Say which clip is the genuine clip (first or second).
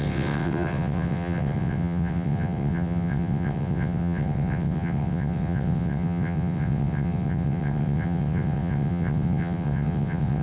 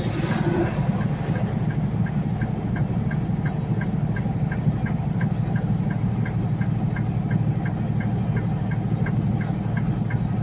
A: second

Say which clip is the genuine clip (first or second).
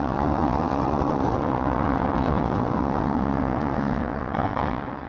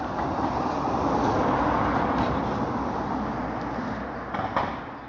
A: second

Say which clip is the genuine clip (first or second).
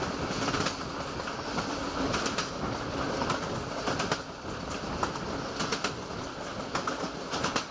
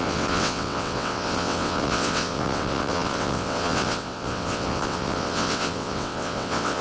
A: first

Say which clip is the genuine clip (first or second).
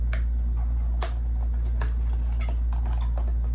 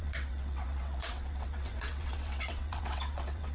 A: first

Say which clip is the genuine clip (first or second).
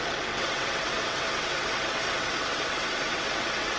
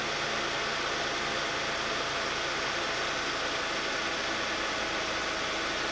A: second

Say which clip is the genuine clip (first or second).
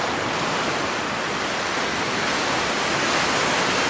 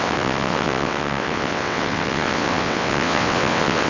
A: first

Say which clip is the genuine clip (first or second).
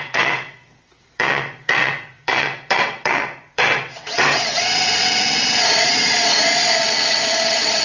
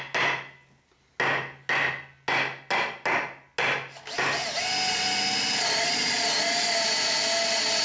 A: second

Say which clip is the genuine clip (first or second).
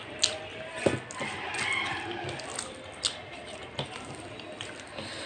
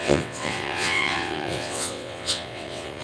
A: first